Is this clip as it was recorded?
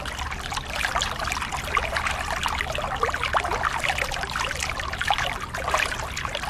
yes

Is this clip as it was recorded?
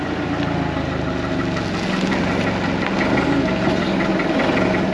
yes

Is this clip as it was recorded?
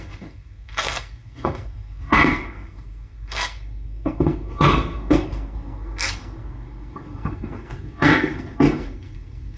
no